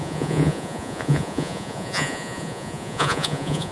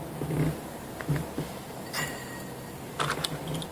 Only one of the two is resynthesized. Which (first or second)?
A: first